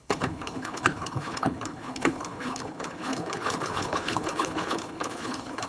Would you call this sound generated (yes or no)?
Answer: yes